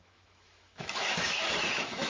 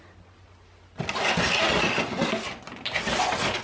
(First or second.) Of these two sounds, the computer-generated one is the first